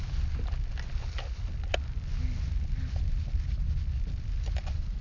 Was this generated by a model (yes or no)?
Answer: no